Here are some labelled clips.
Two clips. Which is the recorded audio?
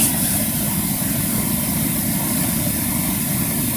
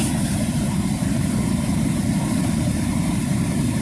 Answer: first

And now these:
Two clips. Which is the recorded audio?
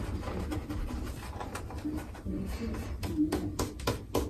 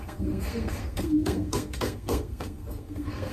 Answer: first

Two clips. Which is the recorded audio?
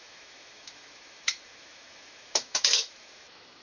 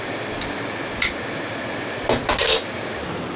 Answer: second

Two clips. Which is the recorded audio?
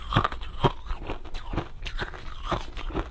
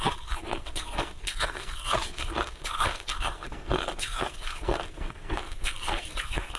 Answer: first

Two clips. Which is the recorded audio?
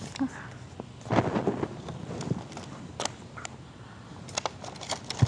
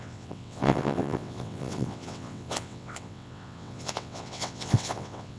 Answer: first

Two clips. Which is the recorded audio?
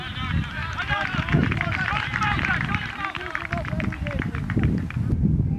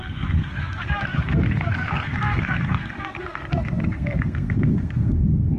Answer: first